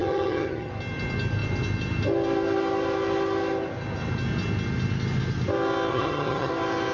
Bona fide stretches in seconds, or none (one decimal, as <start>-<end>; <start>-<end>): 0.7-5.9; 6.5-6.9